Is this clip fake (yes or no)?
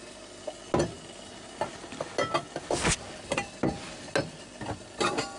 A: no